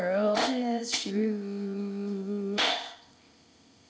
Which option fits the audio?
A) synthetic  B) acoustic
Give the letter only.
A